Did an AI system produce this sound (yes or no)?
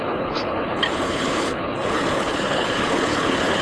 yes